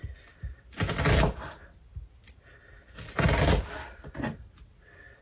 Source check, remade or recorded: recorded